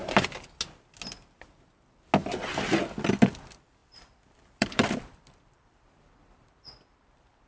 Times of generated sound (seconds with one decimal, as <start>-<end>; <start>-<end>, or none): 3.8-7.5